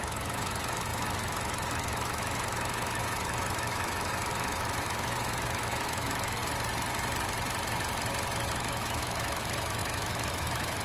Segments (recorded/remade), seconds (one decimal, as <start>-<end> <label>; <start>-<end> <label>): 0.0-6.4 remade; 6.4-8.5 recorded; 8.5-10.8 remade